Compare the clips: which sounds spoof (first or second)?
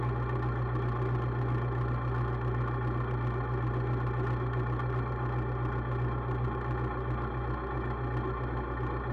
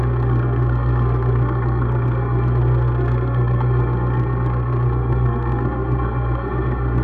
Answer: second